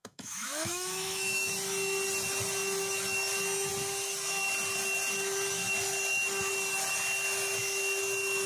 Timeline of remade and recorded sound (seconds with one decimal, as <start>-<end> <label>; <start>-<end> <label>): 0.0-1.5 remade; 1.5-8.5 recorded